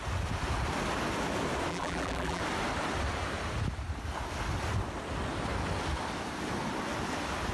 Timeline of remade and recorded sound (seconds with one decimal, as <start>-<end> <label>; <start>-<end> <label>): 0.0-1.7 recorded; 1.7-2.4 remade; 2.4-7.5 recorded